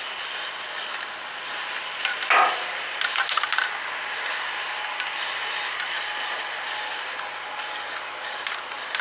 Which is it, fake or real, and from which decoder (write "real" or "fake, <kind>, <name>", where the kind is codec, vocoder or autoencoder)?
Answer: real